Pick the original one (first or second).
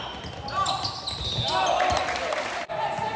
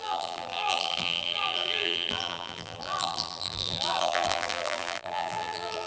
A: first